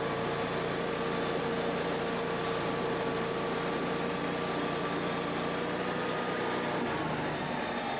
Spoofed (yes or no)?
no